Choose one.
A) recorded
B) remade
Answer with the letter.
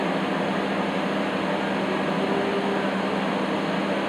A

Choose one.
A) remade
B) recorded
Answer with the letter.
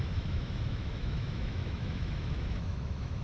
A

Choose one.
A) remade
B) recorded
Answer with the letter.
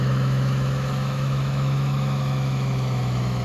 A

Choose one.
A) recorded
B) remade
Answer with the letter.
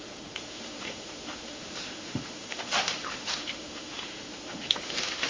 B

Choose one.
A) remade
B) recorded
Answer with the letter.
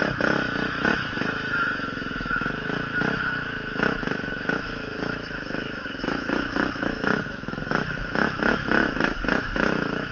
A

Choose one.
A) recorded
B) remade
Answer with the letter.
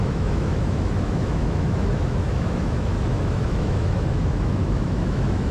B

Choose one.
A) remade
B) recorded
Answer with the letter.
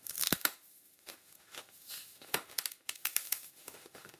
A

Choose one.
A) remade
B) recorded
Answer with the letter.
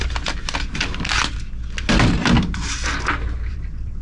B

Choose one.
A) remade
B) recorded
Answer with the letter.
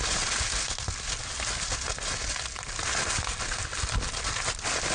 B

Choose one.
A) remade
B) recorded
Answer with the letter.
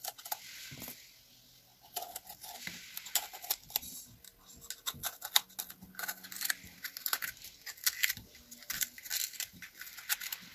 B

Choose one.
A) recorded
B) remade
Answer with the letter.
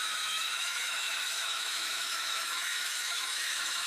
B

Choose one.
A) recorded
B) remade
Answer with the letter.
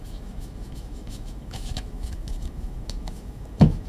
B